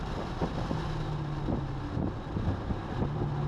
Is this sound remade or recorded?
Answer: recorded